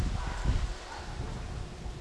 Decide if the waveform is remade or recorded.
recorded